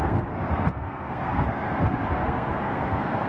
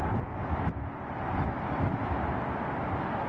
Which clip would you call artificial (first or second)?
first